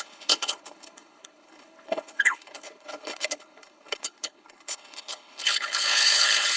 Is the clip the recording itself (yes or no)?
no